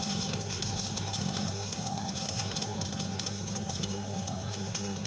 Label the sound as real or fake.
fake